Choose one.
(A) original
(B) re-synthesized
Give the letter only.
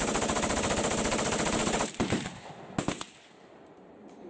A